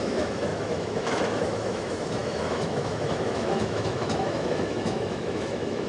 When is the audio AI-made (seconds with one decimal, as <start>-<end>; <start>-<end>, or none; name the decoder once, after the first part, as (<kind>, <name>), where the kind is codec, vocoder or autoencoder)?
0.0-5.9 (autoencoder, DAC-VAE)